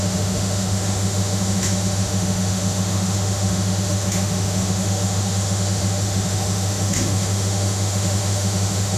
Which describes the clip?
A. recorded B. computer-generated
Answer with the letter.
B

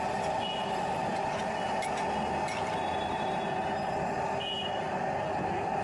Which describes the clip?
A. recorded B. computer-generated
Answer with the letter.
A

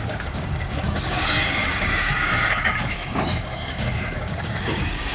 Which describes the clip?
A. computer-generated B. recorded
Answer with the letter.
A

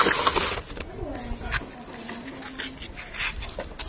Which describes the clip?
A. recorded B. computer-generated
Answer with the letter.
A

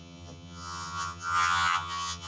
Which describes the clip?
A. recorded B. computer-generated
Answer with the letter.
B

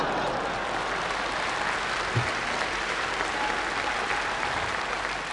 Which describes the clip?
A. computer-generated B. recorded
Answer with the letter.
B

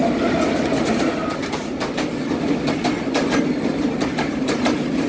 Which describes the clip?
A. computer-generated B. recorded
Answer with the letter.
B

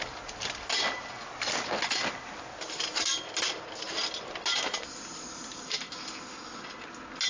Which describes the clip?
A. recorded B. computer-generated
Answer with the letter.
A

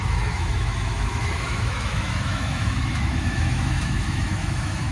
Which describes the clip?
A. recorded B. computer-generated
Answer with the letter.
B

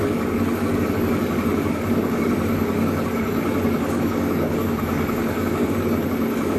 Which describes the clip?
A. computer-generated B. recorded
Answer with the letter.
A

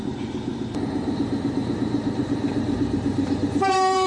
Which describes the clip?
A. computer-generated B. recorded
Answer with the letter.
A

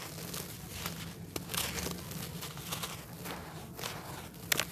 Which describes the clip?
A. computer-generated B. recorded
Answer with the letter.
B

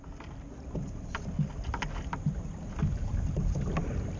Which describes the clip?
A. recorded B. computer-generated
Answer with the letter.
A